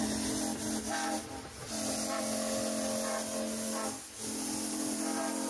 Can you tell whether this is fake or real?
real